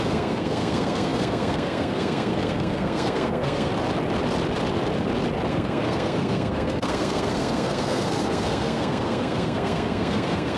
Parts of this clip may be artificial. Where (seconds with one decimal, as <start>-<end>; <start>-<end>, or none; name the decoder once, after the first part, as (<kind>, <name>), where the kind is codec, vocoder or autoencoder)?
0.0-3.7 (codec, SNAC); 5.5-10.6